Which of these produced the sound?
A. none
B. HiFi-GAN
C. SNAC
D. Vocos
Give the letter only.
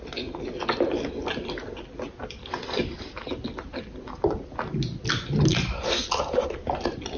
A